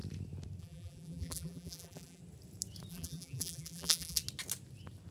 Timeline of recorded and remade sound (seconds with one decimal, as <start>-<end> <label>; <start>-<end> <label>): 0.0-0.6 recorded; 0.6-2.2 remade; 2.2-2.9 recorded; 2.9-4.2 remade; 4.2-5.1 recorded